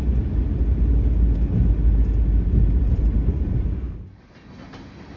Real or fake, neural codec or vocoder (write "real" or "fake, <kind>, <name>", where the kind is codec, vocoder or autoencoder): real